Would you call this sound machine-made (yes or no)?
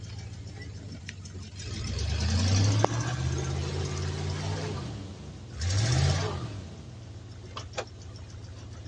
no